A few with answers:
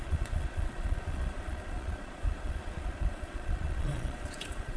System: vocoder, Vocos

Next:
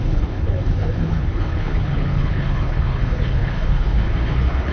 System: codec, HILCodec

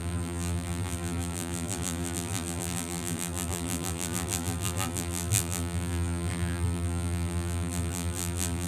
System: vocoder, BigVGAN v2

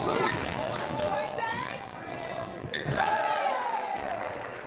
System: vocoder, WaveNeXt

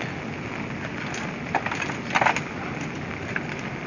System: none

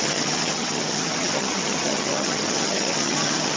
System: vocoder, HiFi-GAN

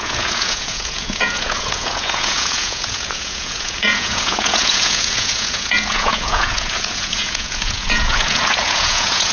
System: vocoder, Vocos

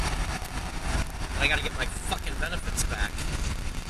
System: none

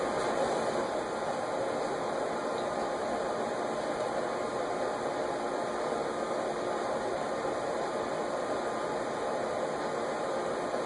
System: none